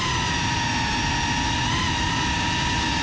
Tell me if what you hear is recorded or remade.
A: recorded